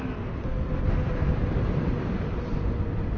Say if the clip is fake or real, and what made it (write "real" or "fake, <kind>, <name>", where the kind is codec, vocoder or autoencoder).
real